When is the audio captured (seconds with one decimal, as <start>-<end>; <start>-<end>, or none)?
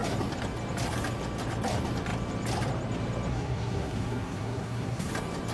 0.0-3.3; 5.1-5.5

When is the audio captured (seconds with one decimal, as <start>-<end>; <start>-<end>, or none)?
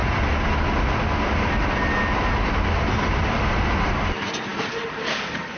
0.0-2.9